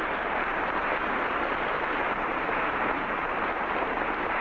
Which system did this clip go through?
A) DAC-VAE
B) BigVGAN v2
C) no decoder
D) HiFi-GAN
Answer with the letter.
B